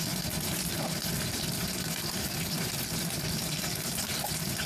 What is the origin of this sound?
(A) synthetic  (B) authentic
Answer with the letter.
B